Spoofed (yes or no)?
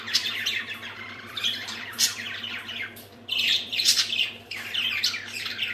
yes